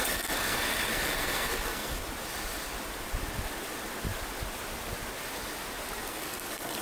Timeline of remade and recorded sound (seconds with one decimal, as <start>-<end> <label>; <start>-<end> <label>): 0.0-2.0 remade; 2.0-6.0 recorded; 6.0-6.8 remade